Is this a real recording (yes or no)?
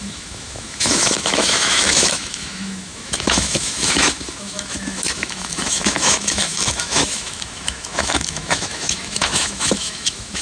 no